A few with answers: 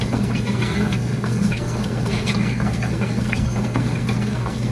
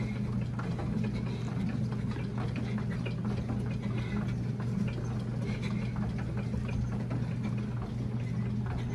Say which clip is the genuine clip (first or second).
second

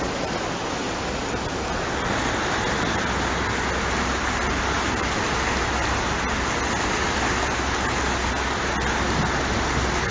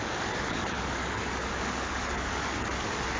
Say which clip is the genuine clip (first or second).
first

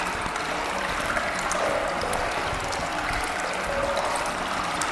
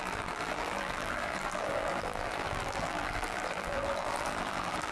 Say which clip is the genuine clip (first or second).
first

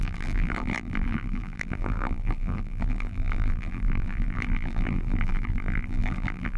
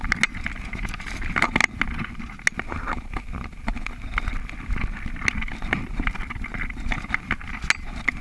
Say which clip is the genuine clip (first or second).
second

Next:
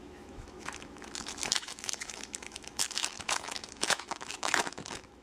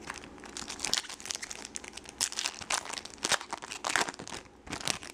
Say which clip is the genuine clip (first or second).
second